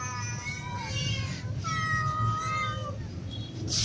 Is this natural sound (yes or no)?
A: yes